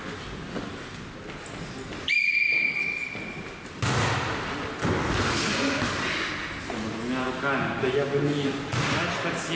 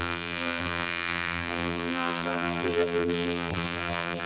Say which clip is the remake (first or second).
second